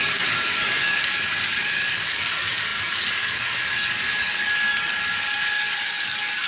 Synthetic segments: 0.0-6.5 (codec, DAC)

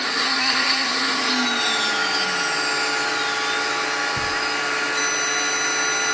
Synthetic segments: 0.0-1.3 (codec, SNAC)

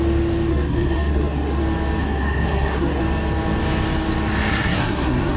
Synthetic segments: 0.5-1.6 (codec, SNAC); 2.0-3.0; 4.5-5.4